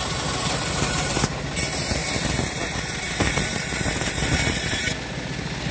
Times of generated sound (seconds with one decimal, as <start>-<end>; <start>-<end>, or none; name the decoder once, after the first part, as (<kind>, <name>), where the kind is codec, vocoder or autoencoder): none